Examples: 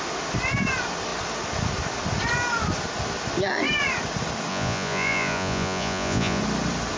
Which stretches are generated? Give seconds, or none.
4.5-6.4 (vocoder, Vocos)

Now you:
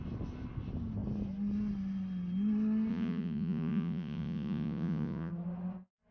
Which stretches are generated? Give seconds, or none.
2.9-5.3 (vocoder, Vocos)

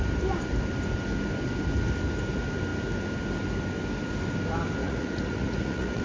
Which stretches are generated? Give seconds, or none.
4.8-6.0 (vocoder, Vocos)

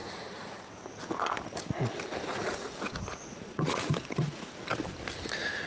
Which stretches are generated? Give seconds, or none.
0.0-0.7 (vocoder, Vocos); 2.3-4.5